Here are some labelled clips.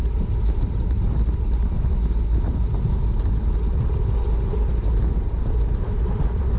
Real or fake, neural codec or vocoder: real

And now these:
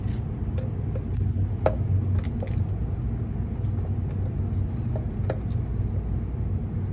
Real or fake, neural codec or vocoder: real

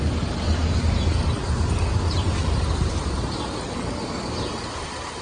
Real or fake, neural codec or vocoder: real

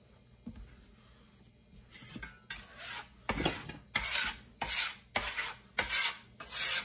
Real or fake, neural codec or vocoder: real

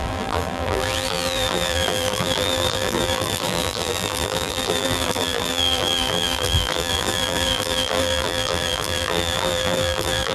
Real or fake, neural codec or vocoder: fake, vocoder, BigVGAN v2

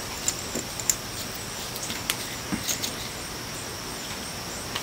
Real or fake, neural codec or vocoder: real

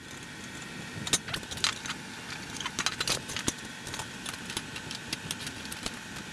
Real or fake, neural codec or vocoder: real